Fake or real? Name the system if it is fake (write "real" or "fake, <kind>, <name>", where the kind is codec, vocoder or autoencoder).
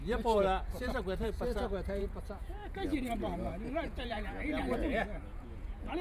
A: fake, vocoder, Vocos